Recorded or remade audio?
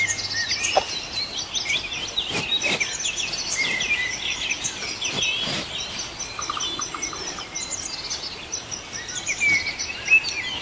recorded